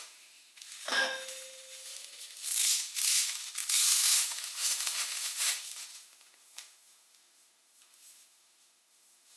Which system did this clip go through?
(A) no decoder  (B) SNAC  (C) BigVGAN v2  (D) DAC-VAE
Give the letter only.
D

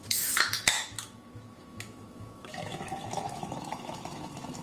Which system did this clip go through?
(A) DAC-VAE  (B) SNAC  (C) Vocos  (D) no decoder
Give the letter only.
A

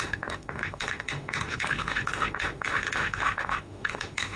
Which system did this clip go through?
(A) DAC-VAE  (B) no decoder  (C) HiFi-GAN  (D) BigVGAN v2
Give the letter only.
A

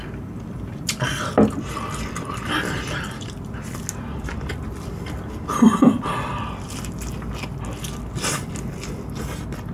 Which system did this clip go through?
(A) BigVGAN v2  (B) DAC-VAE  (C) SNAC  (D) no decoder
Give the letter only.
D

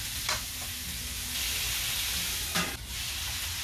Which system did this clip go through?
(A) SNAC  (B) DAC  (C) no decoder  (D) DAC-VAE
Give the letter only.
C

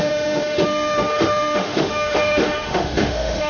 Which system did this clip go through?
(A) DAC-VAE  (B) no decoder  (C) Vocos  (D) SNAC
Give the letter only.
A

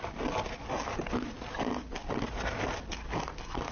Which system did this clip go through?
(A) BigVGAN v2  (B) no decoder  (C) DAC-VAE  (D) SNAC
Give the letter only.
B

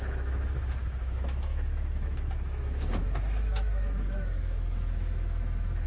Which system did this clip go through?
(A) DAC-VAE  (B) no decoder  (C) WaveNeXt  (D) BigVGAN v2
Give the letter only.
A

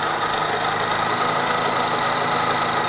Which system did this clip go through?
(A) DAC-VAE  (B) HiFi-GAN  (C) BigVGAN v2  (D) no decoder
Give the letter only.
D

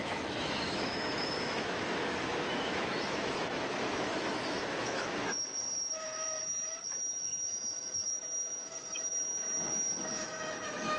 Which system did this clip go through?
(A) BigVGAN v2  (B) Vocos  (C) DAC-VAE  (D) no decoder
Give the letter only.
C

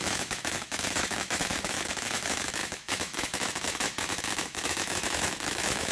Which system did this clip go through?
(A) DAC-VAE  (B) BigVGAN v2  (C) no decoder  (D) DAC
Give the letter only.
A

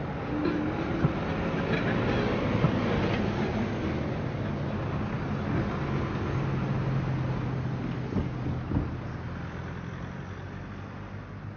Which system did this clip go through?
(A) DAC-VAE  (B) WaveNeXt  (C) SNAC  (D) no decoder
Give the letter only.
D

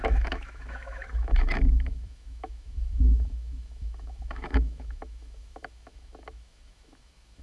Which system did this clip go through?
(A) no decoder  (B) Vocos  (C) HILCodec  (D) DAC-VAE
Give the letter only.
D